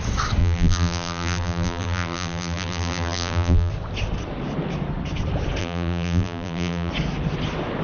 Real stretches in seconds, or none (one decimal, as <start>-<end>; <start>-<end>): 0.0-0.4; 3.7-5.6; 6.9-7.8